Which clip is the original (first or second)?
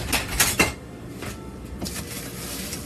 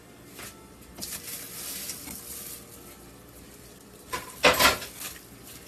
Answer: second